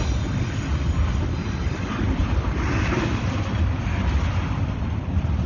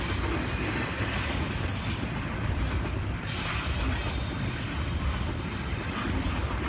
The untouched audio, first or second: second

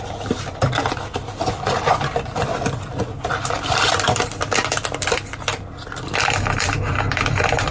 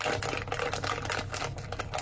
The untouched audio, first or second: second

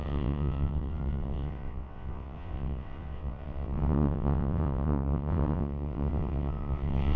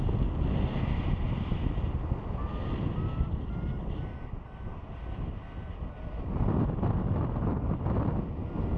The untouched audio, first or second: second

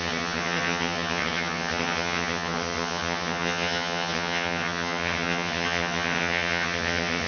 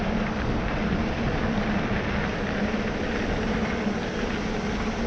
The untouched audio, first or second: second